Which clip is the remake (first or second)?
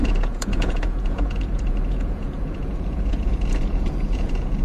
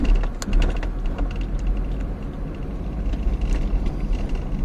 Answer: first